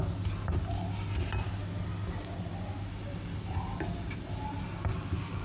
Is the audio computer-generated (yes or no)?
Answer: no